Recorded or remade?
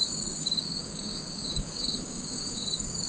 remade